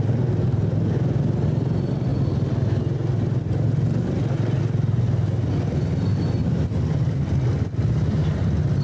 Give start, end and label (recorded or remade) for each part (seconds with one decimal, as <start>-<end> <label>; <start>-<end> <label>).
0.0-8.8 recorded